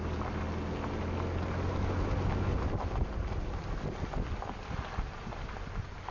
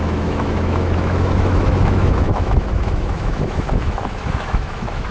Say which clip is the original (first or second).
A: first